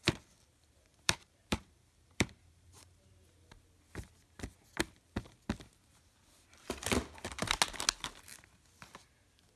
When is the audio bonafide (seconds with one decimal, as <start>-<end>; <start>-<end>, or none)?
0.0-0.9; 3.5-9.6